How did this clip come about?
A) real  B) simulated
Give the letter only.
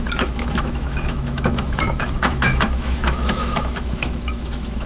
B